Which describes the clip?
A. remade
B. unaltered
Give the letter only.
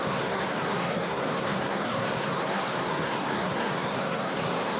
A